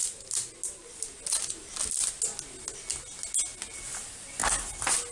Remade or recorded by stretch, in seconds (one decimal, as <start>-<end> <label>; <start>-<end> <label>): 0.0-5.1 recorded